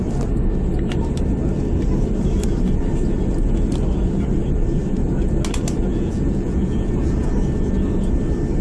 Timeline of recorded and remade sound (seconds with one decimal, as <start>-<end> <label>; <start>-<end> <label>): 0.0-5.9 recorded; 5.9-7.3 remade; 7.3-8.6 recorded